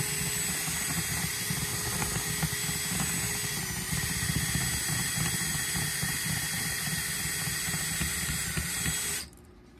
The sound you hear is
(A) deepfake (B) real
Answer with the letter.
B